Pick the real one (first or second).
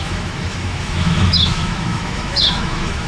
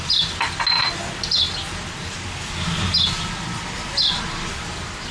second